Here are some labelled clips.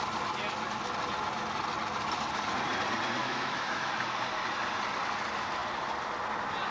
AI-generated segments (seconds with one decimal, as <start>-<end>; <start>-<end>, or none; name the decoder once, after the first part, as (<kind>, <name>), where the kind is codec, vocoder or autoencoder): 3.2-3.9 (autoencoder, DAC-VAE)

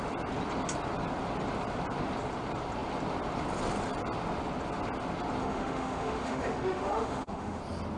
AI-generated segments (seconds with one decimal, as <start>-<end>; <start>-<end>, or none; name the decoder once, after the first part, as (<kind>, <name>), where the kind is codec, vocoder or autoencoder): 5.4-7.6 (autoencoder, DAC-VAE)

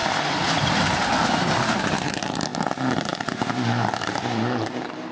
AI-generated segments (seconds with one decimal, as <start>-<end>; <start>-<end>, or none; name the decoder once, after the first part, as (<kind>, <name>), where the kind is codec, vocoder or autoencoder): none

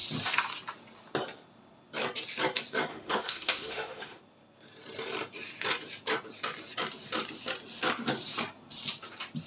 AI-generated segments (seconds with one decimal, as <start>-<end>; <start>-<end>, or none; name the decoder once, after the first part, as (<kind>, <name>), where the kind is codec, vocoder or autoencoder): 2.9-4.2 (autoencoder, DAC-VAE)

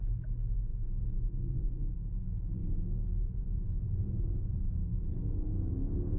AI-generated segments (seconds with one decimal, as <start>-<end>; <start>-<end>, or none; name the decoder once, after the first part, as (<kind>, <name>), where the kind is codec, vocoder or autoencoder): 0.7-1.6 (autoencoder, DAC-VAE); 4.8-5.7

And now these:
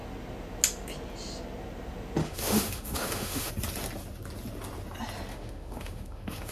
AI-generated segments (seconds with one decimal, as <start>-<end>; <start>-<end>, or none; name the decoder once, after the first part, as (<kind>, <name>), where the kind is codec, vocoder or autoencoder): 2.2-3.5 (autoencoder, DAC-VAE); 5.3-6.5

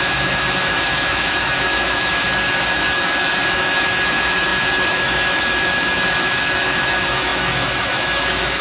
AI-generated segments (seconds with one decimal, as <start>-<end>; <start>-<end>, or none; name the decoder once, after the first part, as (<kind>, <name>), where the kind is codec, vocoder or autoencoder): 0.0-8.6 (autoencoder, DAC-VAE)

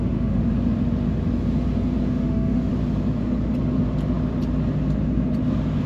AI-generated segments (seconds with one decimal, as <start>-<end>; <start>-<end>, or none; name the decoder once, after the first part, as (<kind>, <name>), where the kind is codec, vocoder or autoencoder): 0.0-0.4 (autoencoder, DAC-VAE); 2.1-2.7